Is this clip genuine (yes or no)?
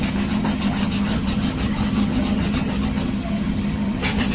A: no